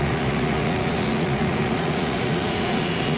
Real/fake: fake